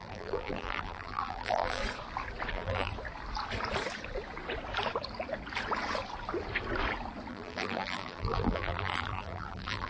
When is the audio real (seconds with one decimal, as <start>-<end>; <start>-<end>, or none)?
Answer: 1.8-2.5; 2.9-7.3